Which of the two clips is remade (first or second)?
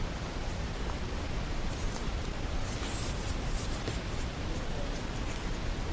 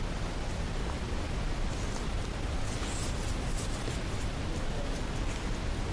first